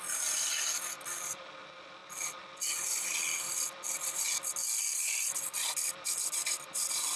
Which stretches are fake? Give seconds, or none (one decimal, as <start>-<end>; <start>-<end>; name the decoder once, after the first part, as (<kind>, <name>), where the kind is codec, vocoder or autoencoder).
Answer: none

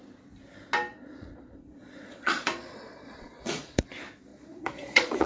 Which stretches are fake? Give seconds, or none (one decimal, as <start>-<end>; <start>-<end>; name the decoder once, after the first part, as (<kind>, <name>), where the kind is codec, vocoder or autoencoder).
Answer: 0.9-3.8 (vocoder, Vocos); 4.3-5.3

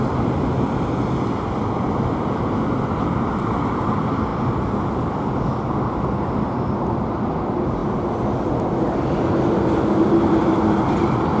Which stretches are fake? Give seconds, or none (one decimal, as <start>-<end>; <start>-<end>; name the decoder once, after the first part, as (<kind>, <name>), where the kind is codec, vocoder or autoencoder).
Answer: none

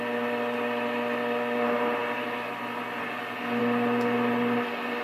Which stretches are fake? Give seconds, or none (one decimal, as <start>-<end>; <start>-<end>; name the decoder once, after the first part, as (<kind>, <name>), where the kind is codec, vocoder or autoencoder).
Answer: 0.0-2.0 (vocoder, BigVGAN v2); 3.6-5.0

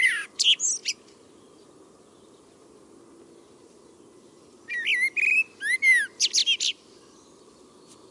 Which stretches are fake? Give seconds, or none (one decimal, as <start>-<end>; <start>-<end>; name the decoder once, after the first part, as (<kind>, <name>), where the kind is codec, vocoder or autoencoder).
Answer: 0.8-1.4 (vocoder, BigVGAN v2)

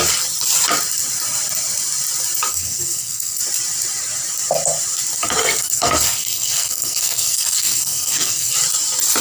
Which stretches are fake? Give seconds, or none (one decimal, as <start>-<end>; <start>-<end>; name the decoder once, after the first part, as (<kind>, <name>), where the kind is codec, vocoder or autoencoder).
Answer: 2.5-3.4 (codec, SNAC); 5.4-8.5

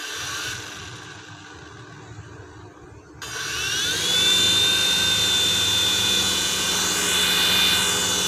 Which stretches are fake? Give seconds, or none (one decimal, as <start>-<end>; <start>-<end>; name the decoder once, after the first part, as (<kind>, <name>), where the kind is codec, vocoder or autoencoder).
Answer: 5.9-6.7 (vocoder, Vocos)

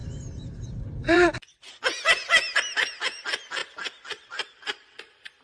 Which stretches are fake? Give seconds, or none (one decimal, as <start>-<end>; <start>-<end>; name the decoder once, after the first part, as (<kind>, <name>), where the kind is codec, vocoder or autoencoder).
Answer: 0.0-1.7 (vocoder, BigVGAN v2)